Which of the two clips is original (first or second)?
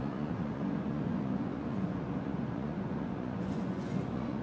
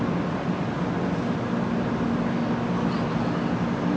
second